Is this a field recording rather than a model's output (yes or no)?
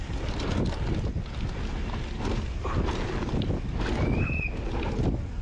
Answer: yes